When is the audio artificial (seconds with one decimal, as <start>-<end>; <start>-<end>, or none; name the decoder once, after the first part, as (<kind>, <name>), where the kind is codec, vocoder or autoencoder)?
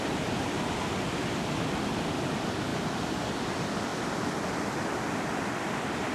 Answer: none